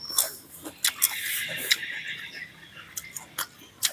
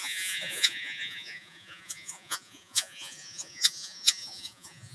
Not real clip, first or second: second